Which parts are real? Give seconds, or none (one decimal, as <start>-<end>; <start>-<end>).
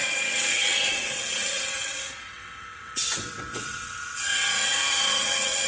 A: none